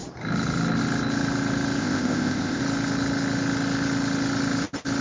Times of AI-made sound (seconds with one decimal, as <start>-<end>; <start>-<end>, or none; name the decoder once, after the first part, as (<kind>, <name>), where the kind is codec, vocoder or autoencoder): 1.8-2.6 (codec, ZipCodec)

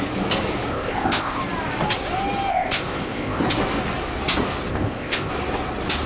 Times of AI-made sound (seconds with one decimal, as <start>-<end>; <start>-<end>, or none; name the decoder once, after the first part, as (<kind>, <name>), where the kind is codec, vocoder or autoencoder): 0.7-1.4 (codec, ZipCodec); 2.5-3.4; 4.7-5.3

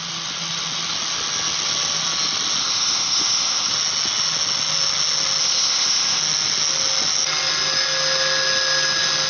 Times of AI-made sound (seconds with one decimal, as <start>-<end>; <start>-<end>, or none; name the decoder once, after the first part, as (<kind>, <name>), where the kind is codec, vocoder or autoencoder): 2.6-3.7 (codec, ZipCodec); 5.4-6.2

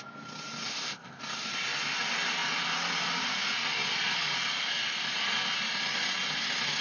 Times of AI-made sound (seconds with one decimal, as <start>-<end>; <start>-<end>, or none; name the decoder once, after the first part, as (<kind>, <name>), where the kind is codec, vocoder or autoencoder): 0.7-1.2 (codec, ZipCodec)

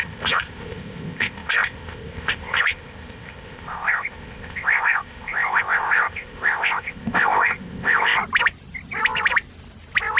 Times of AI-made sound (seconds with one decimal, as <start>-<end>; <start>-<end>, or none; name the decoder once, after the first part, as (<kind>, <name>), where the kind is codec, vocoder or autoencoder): 0.0-8.2 (codec, ZipCodec)